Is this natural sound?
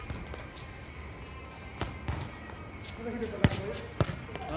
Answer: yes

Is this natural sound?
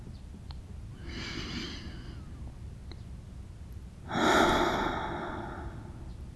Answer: yes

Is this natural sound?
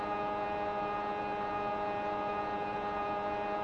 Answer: no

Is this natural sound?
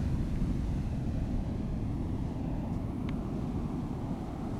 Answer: yes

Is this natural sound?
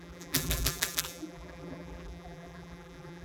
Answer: no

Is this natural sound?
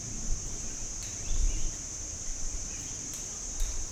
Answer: no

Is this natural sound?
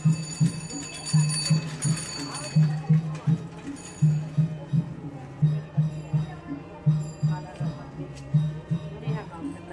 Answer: yes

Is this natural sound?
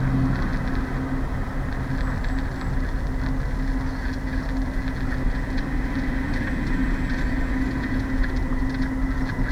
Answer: yes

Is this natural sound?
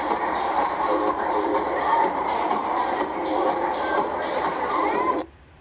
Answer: no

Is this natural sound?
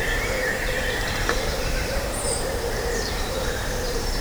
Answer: no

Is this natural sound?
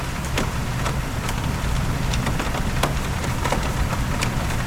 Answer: yes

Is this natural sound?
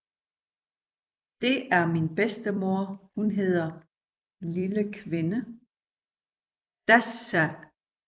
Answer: no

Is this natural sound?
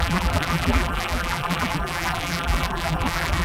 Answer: no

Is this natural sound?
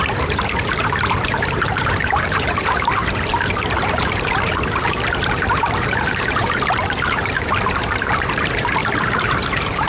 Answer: no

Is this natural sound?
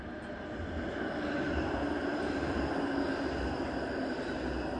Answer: no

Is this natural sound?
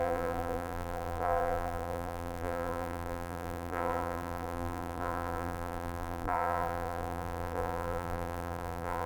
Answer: no